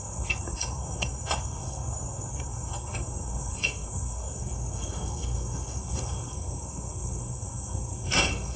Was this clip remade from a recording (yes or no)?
yes